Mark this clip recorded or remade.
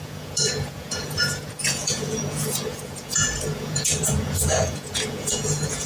remade